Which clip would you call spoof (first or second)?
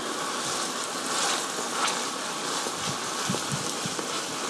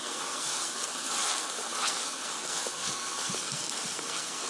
second